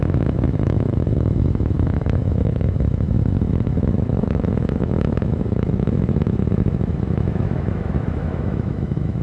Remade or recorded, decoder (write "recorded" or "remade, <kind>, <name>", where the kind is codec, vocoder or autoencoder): remade, autoencoder, DAC-VAE